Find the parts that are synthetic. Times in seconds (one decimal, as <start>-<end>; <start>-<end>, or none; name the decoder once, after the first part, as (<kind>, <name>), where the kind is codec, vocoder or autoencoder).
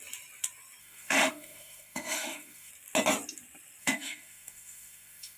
0.8-2.7 (autoencoder, DAC-VAE); 3.8-5.4